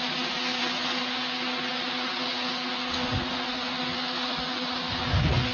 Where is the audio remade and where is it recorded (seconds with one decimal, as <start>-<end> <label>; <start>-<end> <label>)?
0.0-5.5 recorded